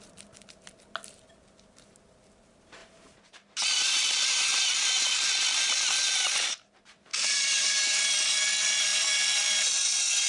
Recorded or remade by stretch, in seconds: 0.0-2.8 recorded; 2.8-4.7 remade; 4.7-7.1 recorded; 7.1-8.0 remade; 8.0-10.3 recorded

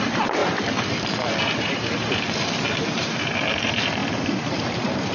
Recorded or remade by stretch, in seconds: 0.0-4.0 remade; 4.0-4.5 recorded; 4.5-5.1 remade

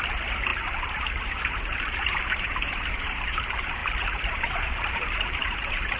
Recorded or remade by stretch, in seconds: 0.0-6.0 remade

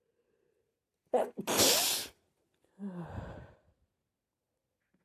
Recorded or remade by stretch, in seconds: 0.0-5.0 recorded

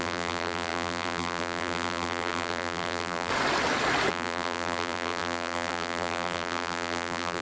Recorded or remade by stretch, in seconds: 0.0-3.3 remade; 3.3-4.1 recorded; 4.1-7.4 remade

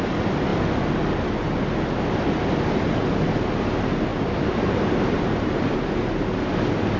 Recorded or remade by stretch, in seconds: 0.0-4.1 recorded; 4.1-6.0 remade; 6.0-7.0 recorded